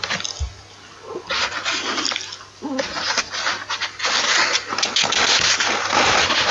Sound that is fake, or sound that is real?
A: real